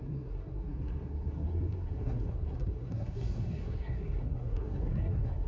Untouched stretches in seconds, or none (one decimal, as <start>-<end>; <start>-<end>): none